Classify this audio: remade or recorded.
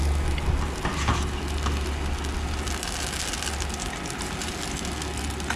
recorded